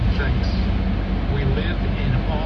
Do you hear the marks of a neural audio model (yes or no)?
no